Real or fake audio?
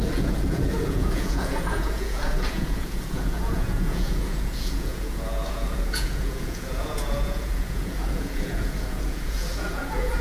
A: fake